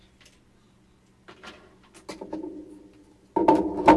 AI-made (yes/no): no